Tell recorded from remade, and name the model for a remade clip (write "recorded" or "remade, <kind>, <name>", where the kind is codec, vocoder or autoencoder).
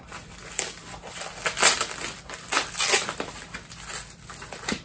recorded